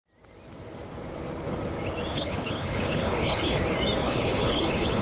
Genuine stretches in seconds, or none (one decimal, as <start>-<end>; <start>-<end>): 0.0-2.1; 3.6-4.0